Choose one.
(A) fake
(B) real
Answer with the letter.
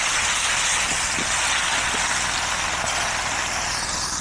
B